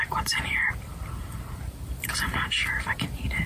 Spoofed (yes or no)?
yes